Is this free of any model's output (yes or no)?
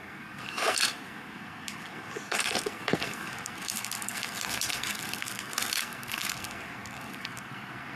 no